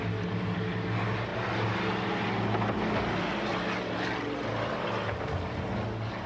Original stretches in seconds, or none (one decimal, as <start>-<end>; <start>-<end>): 0.0-6.3